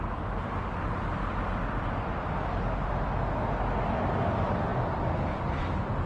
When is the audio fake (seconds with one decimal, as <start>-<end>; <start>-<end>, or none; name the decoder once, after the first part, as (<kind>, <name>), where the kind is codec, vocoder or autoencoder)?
none